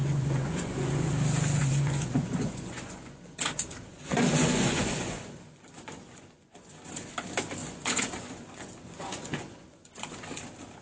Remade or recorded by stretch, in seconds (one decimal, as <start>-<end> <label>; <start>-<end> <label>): 0.0-1.1 remade; 1.1-1.6 recorded; 1.6-6.7 remade; 6.7-7.6 recorded; 7.6-10.0 remade; 10.0-10.8 recorded

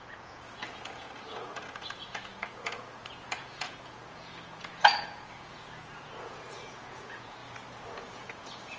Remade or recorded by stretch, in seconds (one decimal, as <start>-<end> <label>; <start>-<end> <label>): 0.0-7.4 remade; 7.4-7.9 recorded; 7.9-8.8 remade

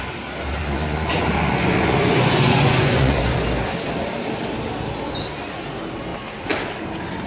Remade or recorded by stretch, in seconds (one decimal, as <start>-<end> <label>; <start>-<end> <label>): 0.0-0.6 recorded; 0.6-3.4 remade; 3.4-7.3 recorded

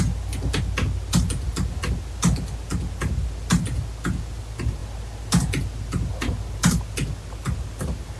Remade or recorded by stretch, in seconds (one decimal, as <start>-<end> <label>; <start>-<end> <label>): 0.0-8.2 recorded

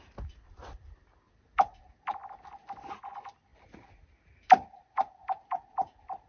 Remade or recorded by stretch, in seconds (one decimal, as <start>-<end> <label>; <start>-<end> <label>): 0.0-6.3 recorded

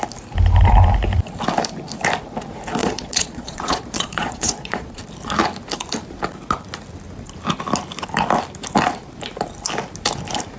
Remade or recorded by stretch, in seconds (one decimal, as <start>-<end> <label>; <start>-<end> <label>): 0.0-2.8 recorded; 2.8-5.0 remade; 5.0-10.6 recorded

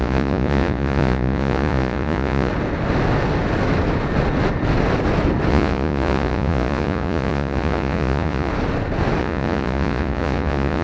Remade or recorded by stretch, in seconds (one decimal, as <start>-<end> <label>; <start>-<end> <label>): 0.0-2.5 remade; 2.5-5.5 recorded; 5.5-8.5 remade; 8.5-9.2 recorded; 9.2-10.8 remade

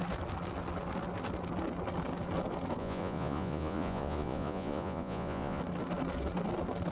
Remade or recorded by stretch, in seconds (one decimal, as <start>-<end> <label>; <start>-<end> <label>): 0.0-2.8 recorded; 2.8-5.6 remade; 5.6-6.9 recorded